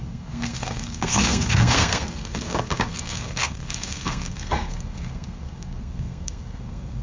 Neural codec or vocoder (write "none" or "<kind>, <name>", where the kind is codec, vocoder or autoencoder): codec, SNAC